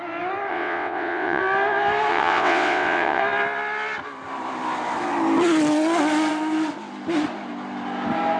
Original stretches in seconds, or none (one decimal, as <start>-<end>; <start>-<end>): 0.0-0.5; 1.4-2.1; 3.2-8.4